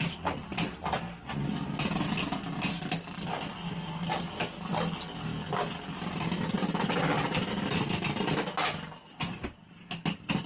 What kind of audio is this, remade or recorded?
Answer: recorded